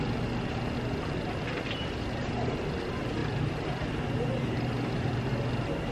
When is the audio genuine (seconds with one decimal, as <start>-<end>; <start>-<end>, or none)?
0.0-3.2; 5.1-5.9